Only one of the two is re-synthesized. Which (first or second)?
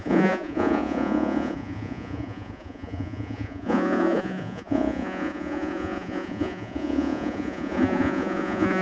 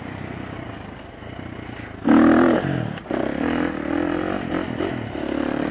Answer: first